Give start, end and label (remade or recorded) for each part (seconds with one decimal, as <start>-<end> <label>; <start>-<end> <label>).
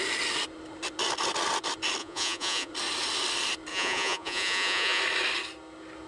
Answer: 0.0-2.0 recorded; 2.0-2.7 remade; 2.7-3.7 recorded; 3.7-5.0 remade; 5.0-6.1 recorded